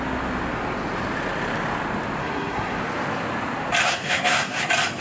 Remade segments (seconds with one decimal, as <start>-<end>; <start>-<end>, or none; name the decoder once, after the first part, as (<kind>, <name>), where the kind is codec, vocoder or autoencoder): 2.2-2.8 (codec, SNAC); 3.8-4.6